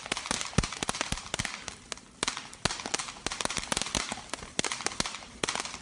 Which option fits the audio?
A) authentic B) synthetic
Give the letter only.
A